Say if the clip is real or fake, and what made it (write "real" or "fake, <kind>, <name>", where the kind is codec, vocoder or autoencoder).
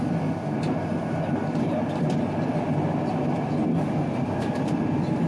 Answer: real